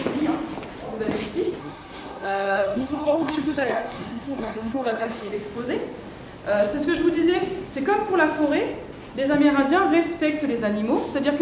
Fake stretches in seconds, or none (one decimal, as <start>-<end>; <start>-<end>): 1.6-5.3